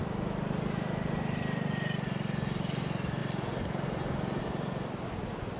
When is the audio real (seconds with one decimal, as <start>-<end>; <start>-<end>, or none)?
0.0-5.6